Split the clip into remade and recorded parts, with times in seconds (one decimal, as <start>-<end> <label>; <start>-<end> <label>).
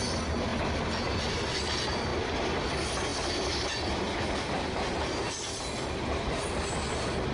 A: 0.0-7.3 recorded